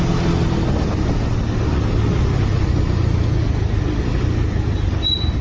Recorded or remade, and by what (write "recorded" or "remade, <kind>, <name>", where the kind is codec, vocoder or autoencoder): recorded